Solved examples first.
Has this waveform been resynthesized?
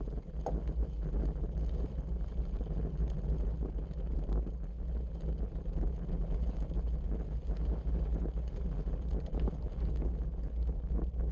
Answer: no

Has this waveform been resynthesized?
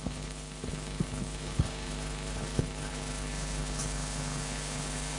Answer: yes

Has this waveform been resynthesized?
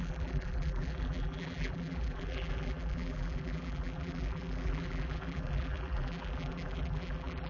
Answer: yes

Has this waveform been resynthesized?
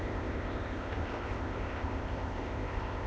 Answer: yes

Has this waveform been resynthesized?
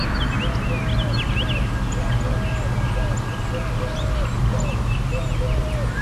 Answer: no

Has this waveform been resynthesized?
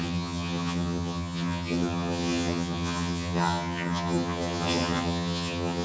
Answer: yes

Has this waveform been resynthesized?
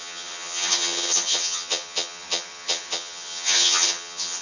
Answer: yes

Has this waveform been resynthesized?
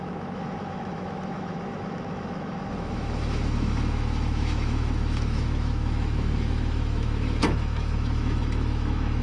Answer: yes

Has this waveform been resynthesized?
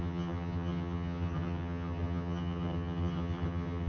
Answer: yes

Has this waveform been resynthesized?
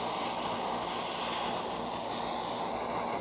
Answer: no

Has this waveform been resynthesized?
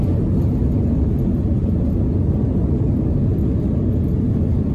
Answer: no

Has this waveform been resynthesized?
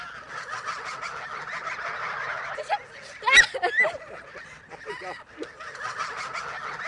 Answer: no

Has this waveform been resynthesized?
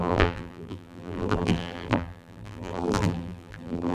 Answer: yes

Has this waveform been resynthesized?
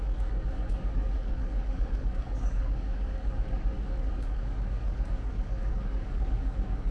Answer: yes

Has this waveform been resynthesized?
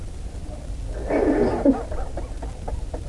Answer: no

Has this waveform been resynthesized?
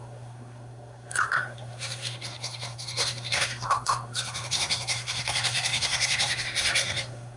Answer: yes